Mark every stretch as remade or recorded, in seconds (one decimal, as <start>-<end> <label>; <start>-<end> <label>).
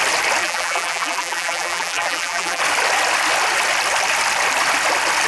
0.0-0.4 recorded; 0.4-2.6 remade; 2.6-5.3 recorded